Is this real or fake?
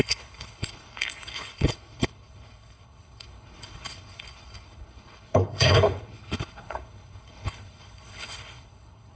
fake